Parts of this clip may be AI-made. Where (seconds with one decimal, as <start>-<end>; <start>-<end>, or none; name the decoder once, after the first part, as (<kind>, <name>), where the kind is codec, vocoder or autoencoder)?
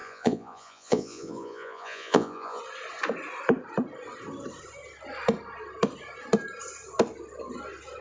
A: 0.0-2.6 (vocoder, Vocos)